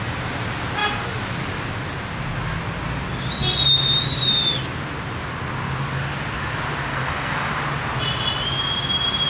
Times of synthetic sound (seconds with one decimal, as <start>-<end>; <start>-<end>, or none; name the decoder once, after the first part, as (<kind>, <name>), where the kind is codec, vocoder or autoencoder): 6.9-7.5 (codec, SNAC)

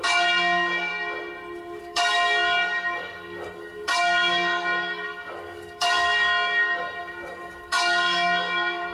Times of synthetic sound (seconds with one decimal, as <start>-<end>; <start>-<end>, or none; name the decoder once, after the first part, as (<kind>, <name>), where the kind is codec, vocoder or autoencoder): 0.0-0.9 (codec, DAC); 1.8-8.9

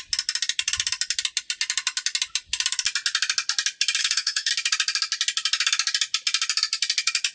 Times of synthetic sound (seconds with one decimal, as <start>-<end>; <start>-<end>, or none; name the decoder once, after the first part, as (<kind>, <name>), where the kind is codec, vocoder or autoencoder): 4.0-4.5 (codec, SNAC)

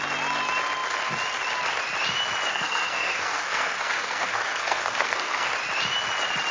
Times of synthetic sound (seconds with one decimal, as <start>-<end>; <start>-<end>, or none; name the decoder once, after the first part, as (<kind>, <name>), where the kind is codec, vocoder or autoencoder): 2.5-5.5 (codec, SNAC)